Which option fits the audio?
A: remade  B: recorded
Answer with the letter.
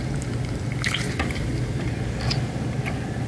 B